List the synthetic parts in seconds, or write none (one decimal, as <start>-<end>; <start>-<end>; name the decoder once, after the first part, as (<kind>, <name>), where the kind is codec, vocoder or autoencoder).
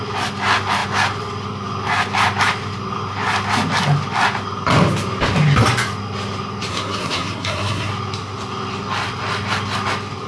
6.7-7.9 (codec, SNAC)